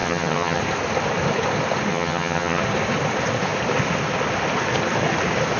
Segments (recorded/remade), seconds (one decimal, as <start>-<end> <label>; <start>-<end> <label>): 0.0-0.6 remade; 0.6-1.9 recorded; 1.9-2.6 remade; 2.6-5.6 recorded